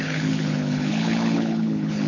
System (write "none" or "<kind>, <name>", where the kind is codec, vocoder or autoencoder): codec, HILCodec